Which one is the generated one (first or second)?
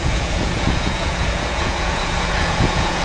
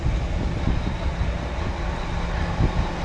first